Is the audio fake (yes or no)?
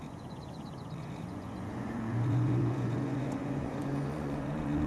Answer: yes